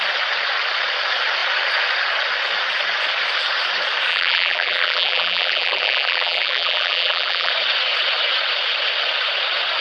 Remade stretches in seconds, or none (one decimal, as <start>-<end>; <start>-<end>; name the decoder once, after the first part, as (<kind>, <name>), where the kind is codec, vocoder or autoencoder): 4.1-7.5 (vocoder, BigVGAN v2)